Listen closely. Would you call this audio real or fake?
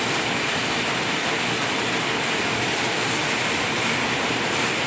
real